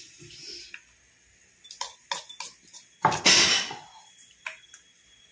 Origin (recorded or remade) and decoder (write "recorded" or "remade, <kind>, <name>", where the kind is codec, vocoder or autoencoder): recorded